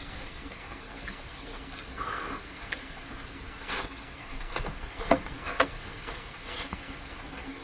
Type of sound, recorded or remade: remade